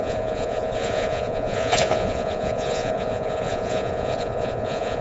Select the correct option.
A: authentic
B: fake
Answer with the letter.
B